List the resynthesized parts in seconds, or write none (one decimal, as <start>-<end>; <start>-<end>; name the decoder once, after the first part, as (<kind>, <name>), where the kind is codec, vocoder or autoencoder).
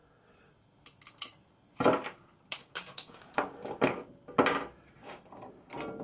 2.6-3.2 (codec, DAC); 5.0-5.5